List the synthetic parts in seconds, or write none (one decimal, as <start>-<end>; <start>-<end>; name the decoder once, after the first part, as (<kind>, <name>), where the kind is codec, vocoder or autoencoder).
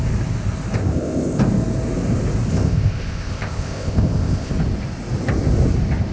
0.8-1.4 (codec, ZipCodec); 2.5-4.5